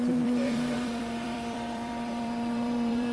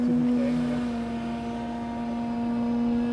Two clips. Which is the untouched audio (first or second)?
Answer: second